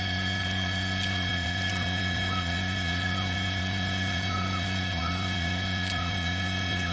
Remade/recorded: remade